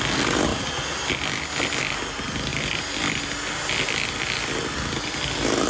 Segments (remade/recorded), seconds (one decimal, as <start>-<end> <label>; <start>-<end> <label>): 0.0-2.5 recorded; 2.5-3.1 remade; 3.1-5.7 recorded